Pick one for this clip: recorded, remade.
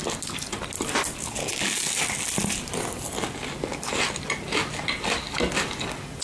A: recorded